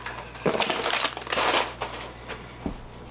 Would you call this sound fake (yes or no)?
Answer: no